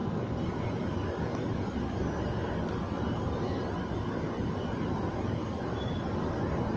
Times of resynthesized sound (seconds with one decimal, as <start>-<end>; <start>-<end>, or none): none